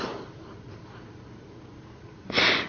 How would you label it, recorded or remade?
remade